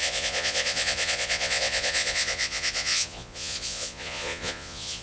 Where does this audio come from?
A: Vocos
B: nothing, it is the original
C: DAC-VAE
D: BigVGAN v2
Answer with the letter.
A